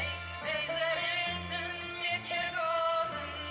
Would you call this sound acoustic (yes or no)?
yes